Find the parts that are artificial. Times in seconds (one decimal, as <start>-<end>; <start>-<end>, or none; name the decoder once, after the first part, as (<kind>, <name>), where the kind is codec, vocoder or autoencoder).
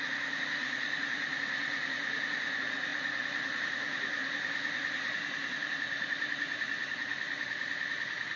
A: 0.0-8.4 (vocoder, Vocos)